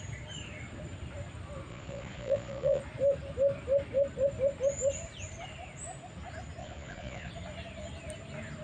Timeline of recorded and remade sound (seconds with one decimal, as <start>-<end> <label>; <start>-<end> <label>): 0.0-1.7 recorded; 1.7-2.8 remade; 2.8-6.6 recorded; 6.6-7.3 remade; 7.3-8.6 recorded